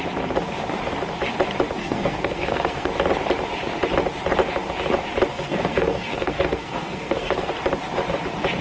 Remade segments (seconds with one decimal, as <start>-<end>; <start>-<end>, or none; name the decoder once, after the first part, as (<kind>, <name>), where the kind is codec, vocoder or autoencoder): 1.8-2.9 (codec, SNAC); 5.3-7.5